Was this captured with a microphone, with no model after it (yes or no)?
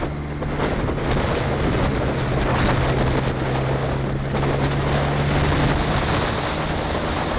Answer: yes